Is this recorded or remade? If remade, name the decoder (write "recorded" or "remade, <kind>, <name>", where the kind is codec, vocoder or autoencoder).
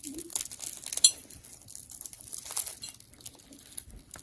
recorded